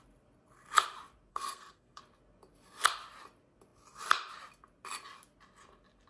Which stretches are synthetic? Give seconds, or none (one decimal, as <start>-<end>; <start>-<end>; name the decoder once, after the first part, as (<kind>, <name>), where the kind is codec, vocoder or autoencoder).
1.3-2.0 (codec, SNAC)